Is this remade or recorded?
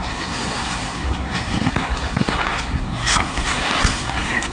remade